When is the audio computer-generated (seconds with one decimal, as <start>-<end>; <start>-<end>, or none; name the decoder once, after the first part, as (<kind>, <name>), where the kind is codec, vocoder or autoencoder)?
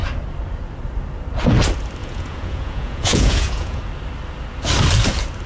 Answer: 2.0-3.8 (vocoder, Vocos)